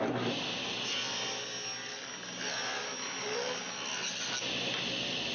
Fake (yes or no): no